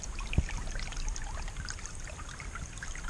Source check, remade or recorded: recorded